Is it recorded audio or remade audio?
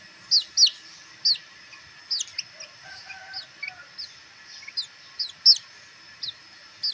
recorded